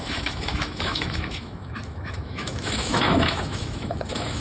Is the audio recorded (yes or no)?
no